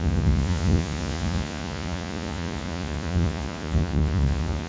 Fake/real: fake